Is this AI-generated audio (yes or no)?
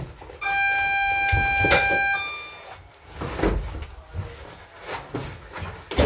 no